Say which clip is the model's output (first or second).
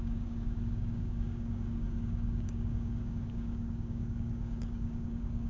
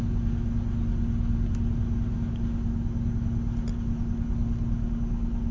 first